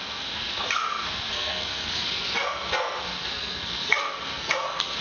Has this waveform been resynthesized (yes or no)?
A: yes